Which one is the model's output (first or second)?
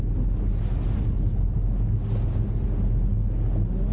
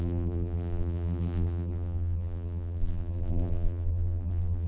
second